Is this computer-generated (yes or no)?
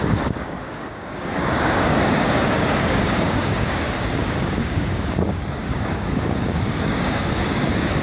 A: yes